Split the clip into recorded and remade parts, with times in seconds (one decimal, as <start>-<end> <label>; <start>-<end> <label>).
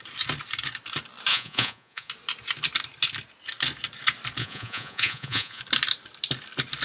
0.0-1.3 recorded; 1.3-2.1 remade; 2.1-4.4 recorded; 4.4-5.6 remade; 5.6-6.8 recorded